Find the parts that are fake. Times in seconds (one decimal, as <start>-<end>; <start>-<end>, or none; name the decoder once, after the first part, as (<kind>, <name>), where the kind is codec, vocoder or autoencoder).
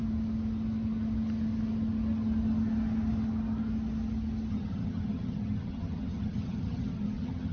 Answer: 4.5-7.5 (vocoder, HiFi-GAN)